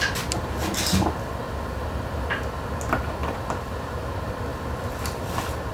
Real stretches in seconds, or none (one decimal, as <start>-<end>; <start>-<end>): 0.0-3.2; 3.8-4.5